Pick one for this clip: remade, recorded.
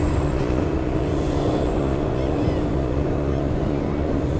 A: remade